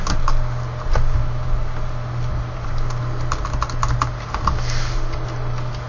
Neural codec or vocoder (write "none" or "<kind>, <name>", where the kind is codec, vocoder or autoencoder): none